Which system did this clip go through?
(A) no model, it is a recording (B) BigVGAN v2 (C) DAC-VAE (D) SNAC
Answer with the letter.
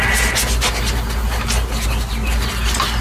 A